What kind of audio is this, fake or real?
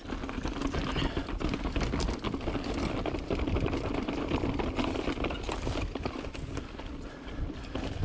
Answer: real